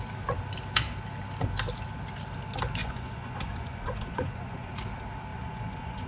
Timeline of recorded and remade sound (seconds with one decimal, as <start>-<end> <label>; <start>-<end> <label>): 0.0-2.8 recorded; 2.8-4.7 remade; 4.7-5.3 recorded; 5.3-6.1 remade